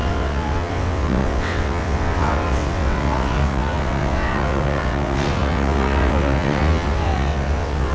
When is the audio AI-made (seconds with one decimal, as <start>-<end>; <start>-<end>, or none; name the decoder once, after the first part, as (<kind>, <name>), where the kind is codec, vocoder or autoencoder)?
0.0-7.9 (vocoder, WaveNeXt)

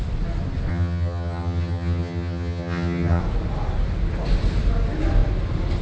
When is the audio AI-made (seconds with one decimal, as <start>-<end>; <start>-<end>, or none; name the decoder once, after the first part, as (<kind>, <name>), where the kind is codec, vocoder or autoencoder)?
0.7-3.2 (vocoder, HiFi-GAN)

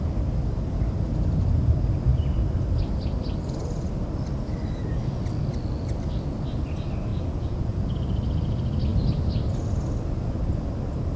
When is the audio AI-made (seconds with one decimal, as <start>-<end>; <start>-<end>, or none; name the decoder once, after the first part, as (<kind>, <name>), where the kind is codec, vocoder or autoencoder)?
7.1-7.8 (vocoder, Vocos)